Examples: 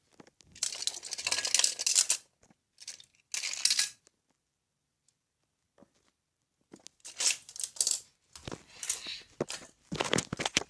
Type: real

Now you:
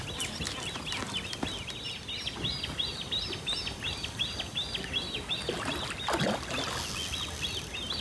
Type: real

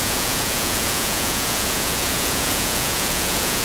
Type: fake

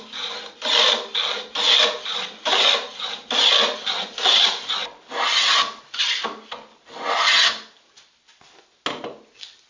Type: real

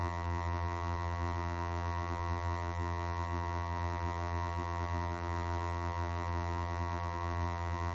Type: fake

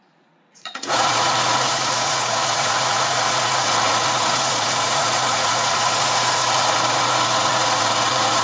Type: fake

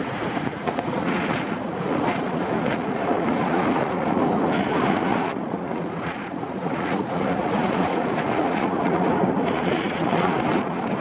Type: fake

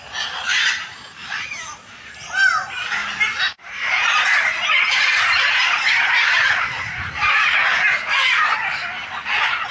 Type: real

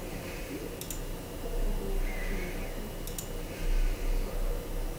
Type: real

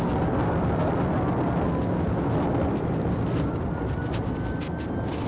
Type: real